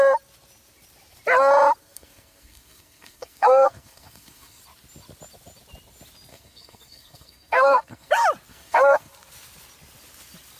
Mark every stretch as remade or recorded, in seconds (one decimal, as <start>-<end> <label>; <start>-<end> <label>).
0.0-1.8 recorded; 1.8-4.6 remade; 4.6-6.3 recorded; 6.3-8.1 remade; 8.1-8.5 recorded; 8.5-9.1 remade; 9.1-10.6 recorded